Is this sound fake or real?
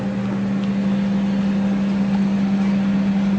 real